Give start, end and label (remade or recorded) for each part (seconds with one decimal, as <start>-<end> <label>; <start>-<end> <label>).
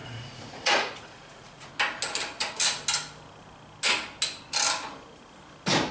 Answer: 0.0-1.7 remade; 1.7-5.9 recorded